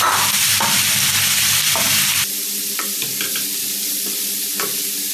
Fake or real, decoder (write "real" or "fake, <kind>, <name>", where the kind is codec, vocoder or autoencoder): real